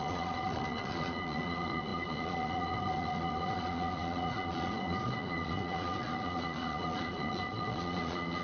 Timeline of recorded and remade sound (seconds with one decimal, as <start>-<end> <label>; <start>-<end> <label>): 0.0-8.4 remade

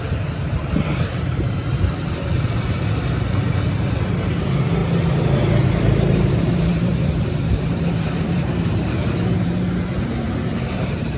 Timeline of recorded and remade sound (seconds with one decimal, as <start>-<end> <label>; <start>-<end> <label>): 0.0-4.8 remade; 4.8-5.5 recorded; 5.5-11.2 remade